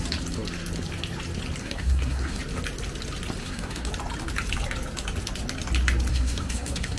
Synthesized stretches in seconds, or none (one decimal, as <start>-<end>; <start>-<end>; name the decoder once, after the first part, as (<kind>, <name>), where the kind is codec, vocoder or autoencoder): 1.6-2.4 (codec, SNAC); 3.4-3.9; 6.1-7.0